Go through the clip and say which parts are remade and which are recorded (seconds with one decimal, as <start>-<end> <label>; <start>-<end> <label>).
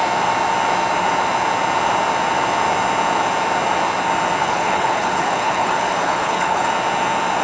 0.0-4.4 recorded; 4.4-6.7 remade; 6.7-7.4 recorded